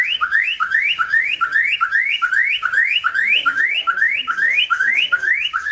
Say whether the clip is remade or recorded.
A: remade